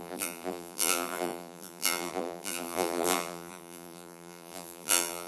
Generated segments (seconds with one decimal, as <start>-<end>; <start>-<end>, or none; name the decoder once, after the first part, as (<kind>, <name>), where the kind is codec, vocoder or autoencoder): 0.0-5.3 (vocoder, BigVGAN v2)